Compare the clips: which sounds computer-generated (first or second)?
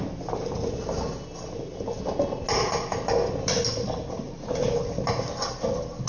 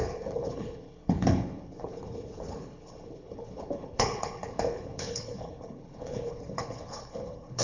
second